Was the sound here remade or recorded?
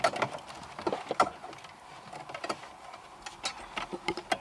recorded